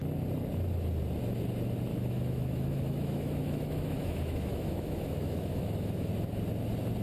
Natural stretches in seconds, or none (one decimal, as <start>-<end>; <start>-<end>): 0.0-1.9; 6.1-7.0